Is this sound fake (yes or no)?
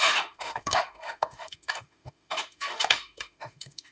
yes